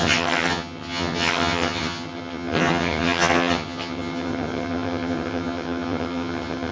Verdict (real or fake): fake